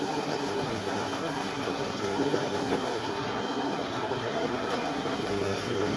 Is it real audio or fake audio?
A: fake